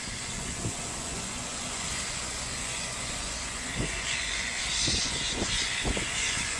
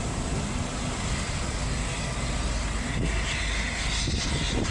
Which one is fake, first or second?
first